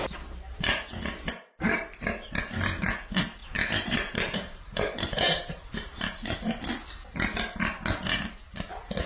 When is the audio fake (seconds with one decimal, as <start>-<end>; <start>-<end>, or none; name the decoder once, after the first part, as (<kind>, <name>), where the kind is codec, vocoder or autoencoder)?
3.4-6.7 (vocoder, BigVGAN v2)